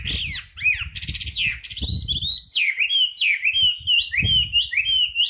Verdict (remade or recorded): recorded